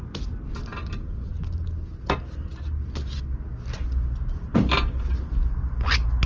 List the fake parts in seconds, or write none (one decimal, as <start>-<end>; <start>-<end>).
none